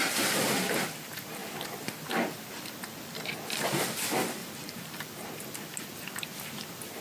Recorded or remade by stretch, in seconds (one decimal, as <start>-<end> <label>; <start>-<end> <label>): 0.0-4.4 recorded; 4.4-5.4 remade; 5.4-7.0 recorded